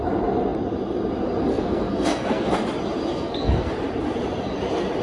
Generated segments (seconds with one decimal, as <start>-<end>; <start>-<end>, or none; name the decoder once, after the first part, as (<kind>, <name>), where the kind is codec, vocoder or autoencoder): 1.5-2.6 (codec, SNAC); 3.1-3.7